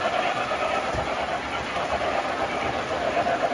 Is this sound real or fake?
fake